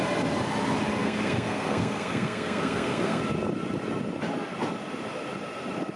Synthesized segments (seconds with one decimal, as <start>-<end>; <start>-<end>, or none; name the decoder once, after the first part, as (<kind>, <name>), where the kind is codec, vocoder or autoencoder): 1.0-3.2 (codec, SNAC)